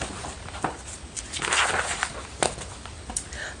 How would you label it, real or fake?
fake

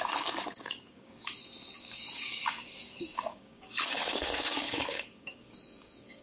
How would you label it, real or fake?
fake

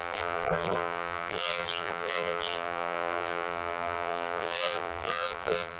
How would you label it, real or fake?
fake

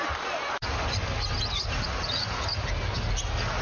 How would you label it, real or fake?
real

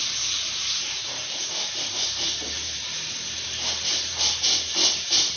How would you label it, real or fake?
fake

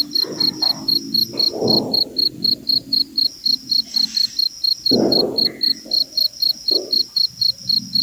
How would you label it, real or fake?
real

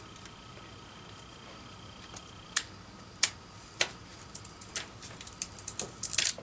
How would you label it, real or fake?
fake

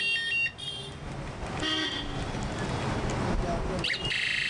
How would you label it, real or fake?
real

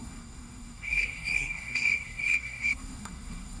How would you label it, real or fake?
fake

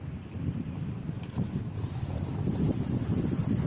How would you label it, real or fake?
fake